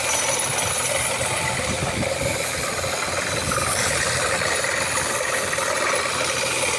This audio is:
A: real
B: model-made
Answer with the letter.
A